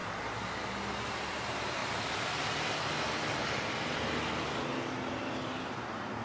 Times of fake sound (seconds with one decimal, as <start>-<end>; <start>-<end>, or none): 1.3-1.8; 5.1-6.2